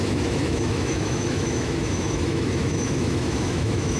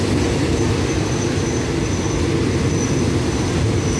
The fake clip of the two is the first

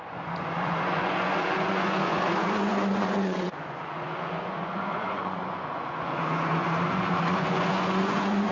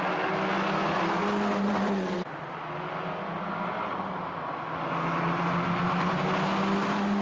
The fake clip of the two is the first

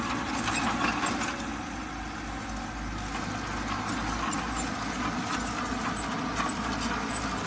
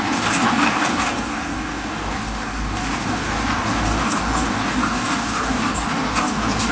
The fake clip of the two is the second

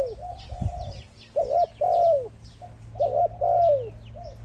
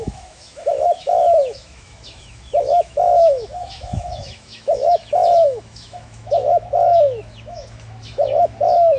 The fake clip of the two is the second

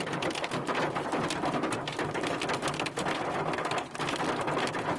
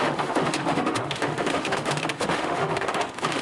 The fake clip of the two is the second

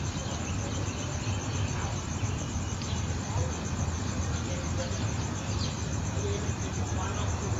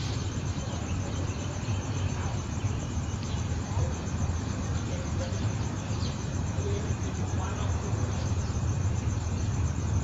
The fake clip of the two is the second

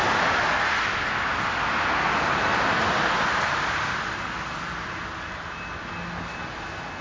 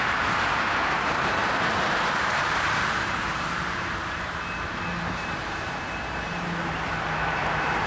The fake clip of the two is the second